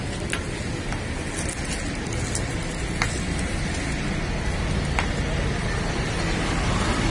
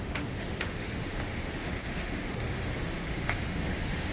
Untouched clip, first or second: first